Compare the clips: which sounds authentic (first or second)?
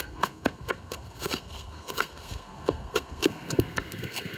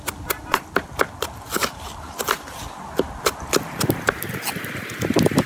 second